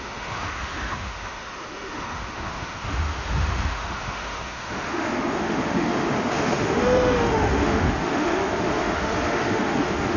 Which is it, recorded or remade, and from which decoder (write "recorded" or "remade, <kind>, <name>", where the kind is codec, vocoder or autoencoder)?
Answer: remade, autoencoder, DAC-VAE